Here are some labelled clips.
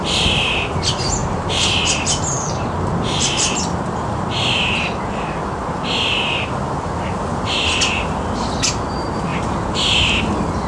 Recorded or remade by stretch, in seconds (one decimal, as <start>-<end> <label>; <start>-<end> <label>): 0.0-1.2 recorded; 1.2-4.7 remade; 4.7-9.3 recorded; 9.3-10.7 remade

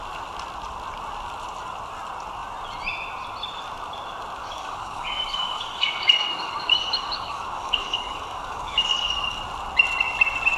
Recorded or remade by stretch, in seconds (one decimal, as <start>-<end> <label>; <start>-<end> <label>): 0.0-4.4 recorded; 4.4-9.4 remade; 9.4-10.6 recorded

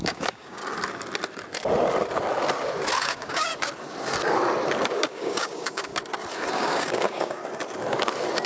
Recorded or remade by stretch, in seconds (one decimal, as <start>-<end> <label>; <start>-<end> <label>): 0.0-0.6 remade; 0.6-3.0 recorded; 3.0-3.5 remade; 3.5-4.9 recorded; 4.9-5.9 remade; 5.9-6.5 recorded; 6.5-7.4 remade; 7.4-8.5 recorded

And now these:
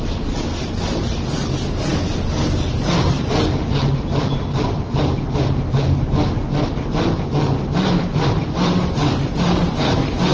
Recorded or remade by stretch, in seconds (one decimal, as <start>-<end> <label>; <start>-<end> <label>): 0.0-10.3 recorded

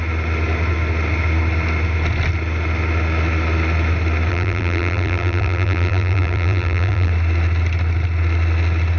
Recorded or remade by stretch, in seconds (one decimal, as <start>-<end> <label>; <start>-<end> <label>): 0.0-4.3 recorded; 4.3-7.1 remade; 7.1-9.0 recorded

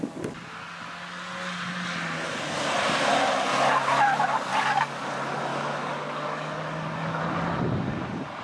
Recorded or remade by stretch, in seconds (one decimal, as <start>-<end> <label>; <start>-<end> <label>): 0.0-4.5 recorded; 4.5-5.1 remade; 5.1-5.5 recorded; 5.5-7.2 remade; 7.2-8.4 recorded